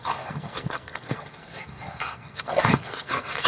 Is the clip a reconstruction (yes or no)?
yes